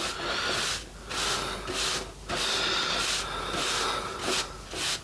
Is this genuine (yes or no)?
yes